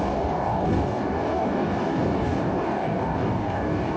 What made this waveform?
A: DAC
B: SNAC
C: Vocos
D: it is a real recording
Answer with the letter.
A